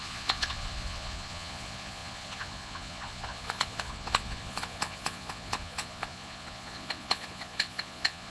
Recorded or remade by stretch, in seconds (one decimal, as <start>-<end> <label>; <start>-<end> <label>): 0.0-8.3 remade